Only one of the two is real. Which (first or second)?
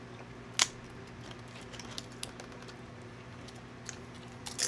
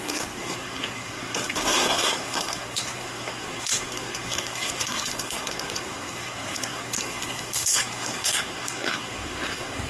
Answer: first